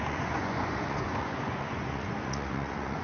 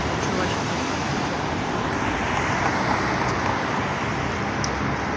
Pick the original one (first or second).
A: second